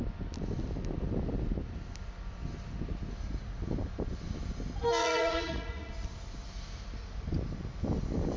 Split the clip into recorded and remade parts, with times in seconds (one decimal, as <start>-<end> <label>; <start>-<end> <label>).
0.0-5.0 recorded; 5.0-5.9 remade; 5.9-8.4 recorded